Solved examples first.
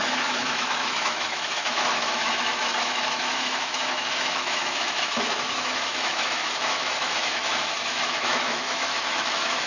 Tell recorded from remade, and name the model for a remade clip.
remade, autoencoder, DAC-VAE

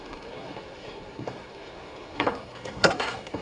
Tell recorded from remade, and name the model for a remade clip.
remade, codec, SNAC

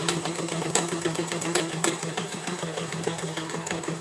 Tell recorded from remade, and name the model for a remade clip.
remade, codec, SNAC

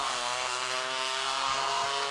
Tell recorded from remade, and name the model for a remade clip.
remade, codec, SNAC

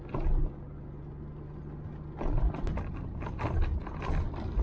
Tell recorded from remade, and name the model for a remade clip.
recorded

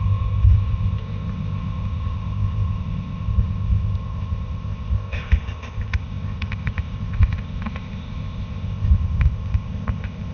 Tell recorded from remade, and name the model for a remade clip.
remade, codec, ZipCodec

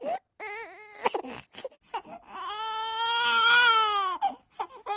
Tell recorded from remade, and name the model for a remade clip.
recorded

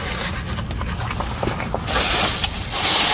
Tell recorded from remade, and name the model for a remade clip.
recorded